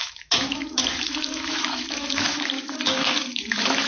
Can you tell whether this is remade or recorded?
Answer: remade